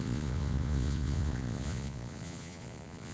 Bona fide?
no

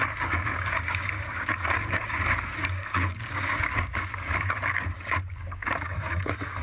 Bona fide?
no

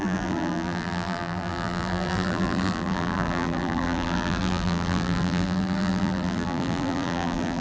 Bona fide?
no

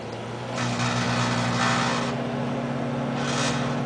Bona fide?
yes